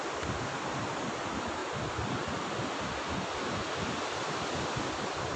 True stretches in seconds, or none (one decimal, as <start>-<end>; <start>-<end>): 0.0-5.4

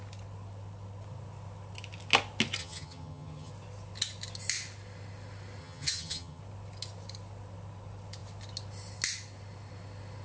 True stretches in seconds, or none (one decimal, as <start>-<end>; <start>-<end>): 0.0-2.6; 3.5-5.6; 6.4-10.2